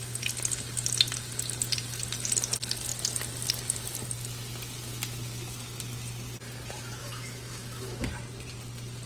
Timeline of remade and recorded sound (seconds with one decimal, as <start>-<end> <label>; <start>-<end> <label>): 0.0-7.0 recorded; 7.0-8.1 remade; 8.1-9.1 recorded